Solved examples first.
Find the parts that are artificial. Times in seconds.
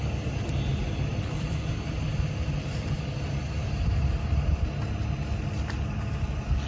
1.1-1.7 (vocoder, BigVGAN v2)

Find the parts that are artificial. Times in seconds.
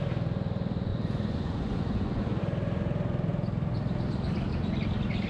0.9-2.4 (vocoder, Vocos)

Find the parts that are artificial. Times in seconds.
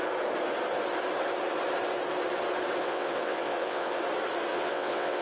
2.8-4.0 (vocoder, WaveNeXt); 4.5-5.2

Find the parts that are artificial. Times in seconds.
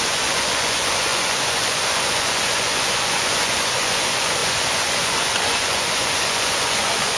0.0-7.2 (vocoder, Vocos)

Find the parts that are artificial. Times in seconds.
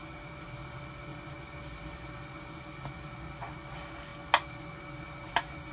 none